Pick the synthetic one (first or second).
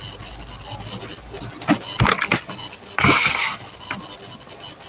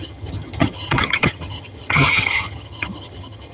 second